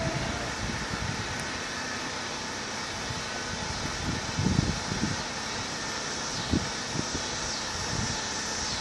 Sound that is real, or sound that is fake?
real